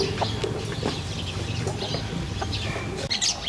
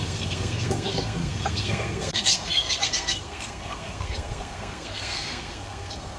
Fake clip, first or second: second